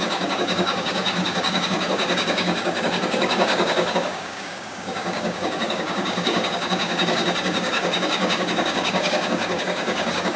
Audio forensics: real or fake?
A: fake